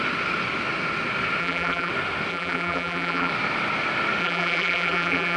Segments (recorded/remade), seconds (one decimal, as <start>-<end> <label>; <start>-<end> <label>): 0.0-1.4 recorded; 1.4-1.9 remade; 1.9-2.3 recorded; 2.3-3.3 remade; 3.3-4.2 recorded; 4.2-5.4 remade